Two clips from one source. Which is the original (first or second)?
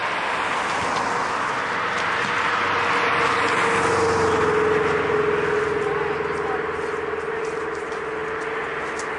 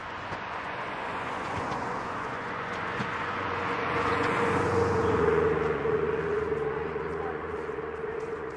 first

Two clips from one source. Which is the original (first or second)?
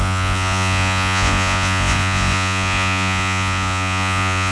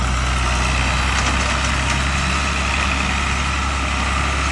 second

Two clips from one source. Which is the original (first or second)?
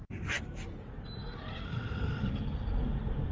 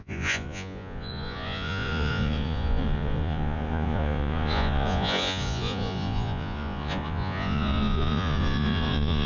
first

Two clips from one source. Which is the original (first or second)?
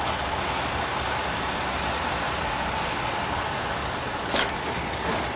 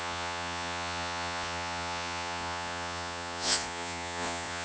first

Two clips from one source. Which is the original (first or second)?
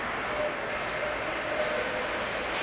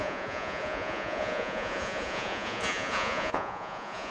first